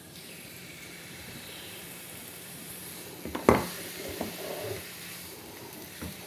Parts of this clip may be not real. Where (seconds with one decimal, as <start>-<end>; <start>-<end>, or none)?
0.0-2.8; 3.8-6.3